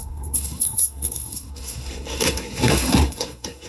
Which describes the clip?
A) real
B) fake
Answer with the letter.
B